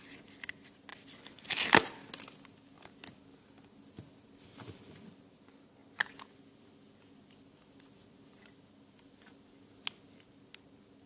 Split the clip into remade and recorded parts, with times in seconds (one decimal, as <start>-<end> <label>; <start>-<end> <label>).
0.0-11.1 recorded